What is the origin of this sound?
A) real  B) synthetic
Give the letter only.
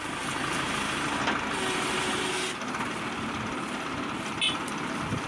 A